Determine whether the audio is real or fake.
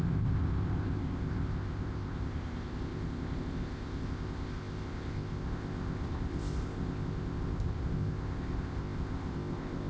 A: fake